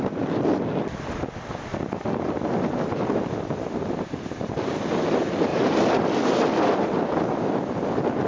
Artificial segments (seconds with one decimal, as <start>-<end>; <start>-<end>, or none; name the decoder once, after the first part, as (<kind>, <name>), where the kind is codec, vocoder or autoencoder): 1.7-4.7 (vocoder, BigVGAN v2); 5.5-7.0